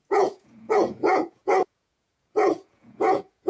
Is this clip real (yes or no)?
no